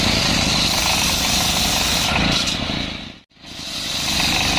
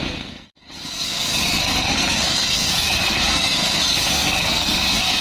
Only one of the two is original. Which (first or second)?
first